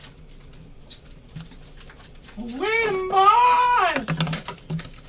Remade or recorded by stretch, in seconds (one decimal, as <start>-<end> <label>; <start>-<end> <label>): 0.0-5.1 recorded